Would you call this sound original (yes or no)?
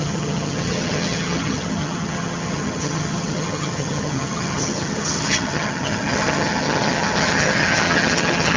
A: no